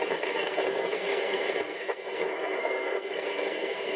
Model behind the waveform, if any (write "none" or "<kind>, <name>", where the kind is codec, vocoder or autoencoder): codec, SNAC